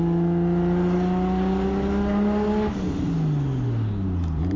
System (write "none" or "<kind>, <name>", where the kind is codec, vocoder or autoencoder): none